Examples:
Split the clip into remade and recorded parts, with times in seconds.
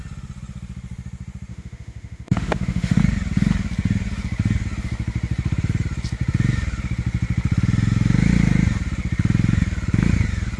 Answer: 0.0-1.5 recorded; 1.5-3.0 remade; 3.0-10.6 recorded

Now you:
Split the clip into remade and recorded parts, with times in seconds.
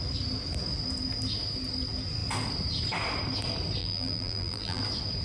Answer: 0.0-3.8 recorded; 3.8-4.8 remade; 4.8-5.2 recorded